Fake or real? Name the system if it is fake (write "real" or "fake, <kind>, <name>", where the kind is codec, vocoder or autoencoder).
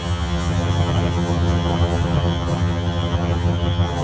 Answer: fake, vocoder, HiFi-GAN